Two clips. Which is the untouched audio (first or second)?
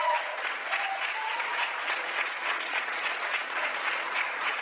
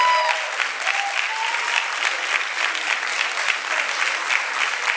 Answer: second